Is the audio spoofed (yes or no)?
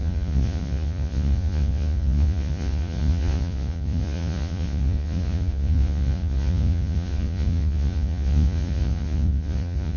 yes